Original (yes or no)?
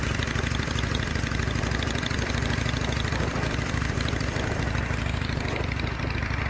no